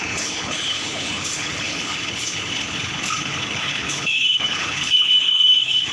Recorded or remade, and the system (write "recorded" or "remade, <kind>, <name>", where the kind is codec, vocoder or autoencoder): remade, codec, HILCodec